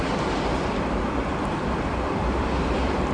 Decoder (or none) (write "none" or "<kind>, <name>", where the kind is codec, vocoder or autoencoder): vocoder, BigVGAN v2